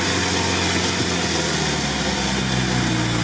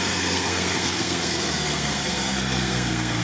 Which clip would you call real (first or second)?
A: first